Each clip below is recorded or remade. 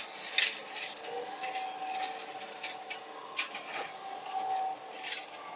recorded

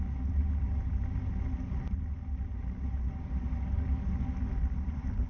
recorded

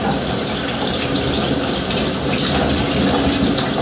recorded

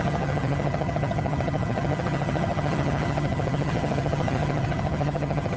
remade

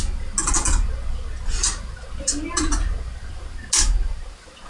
recorded